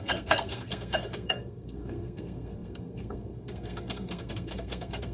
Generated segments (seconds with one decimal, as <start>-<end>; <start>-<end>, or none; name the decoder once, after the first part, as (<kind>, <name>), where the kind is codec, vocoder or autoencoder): 0.0-5.1 (codec, SNAC)